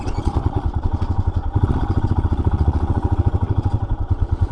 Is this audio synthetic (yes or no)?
yes